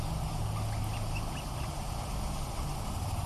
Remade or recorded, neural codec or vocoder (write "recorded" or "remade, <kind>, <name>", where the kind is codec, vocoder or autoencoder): recorded